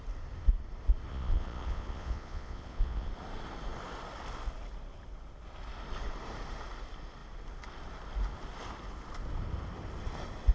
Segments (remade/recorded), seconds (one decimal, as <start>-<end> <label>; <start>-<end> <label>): 0.0-1.1 recorded; 1.1-3.1 remade; 3.1-10.5 recorded